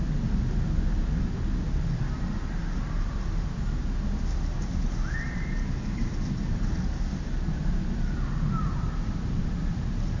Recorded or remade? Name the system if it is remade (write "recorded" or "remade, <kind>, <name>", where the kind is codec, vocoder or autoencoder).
recorded